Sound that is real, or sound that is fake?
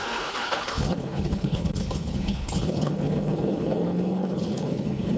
fake